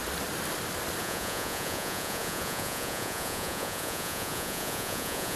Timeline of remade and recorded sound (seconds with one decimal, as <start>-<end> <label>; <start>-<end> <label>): 0.0-1.0 recorded; 1.0-5.4 remade